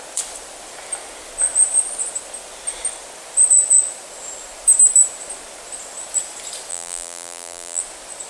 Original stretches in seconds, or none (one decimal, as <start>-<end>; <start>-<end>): 0.0-6.7; 7.8-8.3